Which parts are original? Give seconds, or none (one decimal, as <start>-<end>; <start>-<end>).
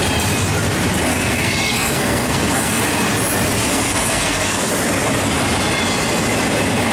0.0-1.1; 2.8-3.7; 4.7-6.9